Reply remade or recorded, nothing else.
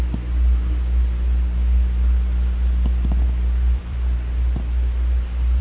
remade